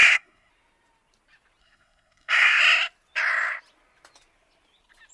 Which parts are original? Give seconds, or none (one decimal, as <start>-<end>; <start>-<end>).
0.5-1.6; 2.6-5.1